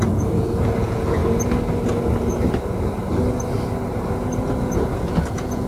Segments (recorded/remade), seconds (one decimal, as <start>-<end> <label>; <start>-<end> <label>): 0.0-1.2 remade; 1.2-4.6 recorded; 4.6-5.7 remade